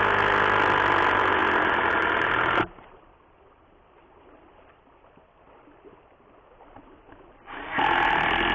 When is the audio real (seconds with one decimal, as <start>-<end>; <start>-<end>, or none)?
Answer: 0.0-8.5